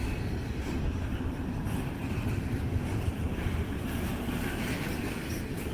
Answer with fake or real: fake